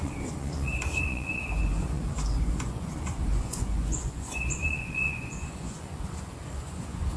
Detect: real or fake fake